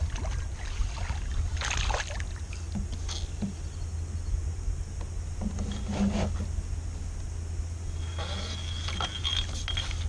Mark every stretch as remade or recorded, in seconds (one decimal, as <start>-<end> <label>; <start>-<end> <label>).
0.0-10.1 recorded